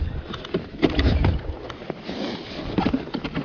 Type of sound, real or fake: real